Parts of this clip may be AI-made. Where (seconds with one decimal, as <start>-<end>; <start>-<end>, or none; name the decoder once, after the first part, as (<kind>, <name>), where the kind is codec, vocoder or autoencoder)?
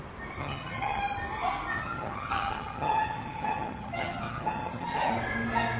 0.4-1.0 (vocoder, HiFi-GAN); 1.7-5.1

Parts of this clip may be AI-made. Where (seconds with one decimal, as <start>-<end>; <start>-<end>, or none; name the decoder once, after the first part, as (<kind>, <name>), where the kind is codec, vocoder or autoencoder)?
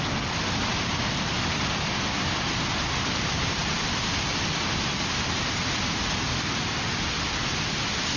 none